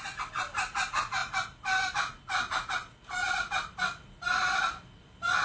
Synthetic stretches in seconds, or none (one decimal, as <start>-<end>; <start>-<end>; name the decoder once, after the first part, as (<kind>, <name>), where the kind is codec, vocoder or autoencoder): none